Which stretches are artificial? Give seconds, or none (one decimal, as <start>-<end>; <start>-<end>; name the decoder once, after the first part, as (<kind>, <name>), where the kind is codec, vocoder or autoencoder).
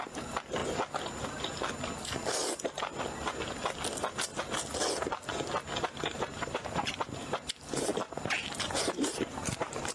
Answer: 0.0-0.6 (vocoder, BigVGAN v2); 5.8-9.9